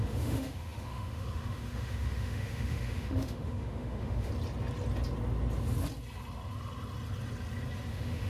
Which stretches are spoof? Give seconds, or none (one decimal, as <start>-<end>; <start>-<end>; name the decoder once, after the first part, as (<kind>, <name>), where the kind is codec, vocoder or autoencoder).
0.0-4.3 (autoencoder, DAC-VAE); 7.9-8.3